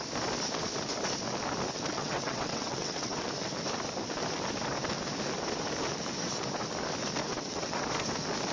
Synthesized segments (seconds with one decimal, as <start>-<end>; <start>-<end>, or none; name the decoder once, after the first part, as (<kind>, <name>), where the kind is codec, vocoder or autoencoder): 1.9-3.3 (vocoder, WaveNeXt); 7.3-7.8